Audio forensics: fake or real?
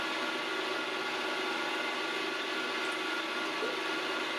real